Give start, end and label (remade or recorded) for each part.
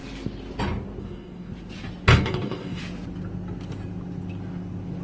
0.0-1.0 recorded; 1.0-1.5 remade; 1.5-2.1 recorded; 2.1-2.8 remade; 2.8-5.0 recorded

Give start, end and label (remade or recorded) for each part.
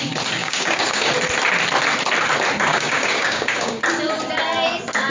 0.0-0.4 recorded; 0.4-1.1 remade; 1.1-2.7 recorded; 2.7-3.8 remade; 3.8-5.1 recorded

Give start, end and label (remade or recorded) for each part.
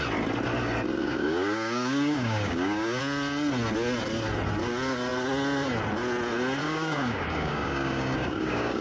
0.0-1.0 recorded; 1.0-3.0 remade; 3.0-6.6 recorded; 6.6-8.8 remade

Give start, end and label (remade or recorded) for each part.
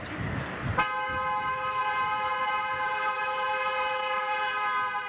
0.0-5.1 recorded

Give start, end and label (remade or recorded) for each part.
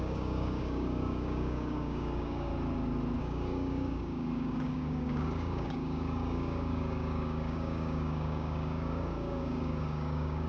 0.0-2.5 remade; 2.5-3.2 recorded; 3.2-10.5 remade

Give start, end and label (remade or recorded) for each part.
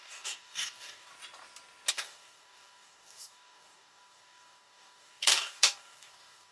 0.0-1.1 remade; 1.1-1.9 recorded; 1.9-6.5 remade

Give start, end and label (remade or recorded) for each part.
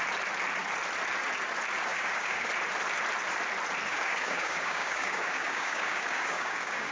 0.0-1.9 recorded; 1.9-2.5 remade; 2.5-3.9 recorded; 3.9-6.9 remade